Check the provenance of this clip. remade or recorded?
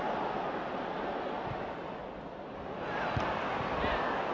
recorded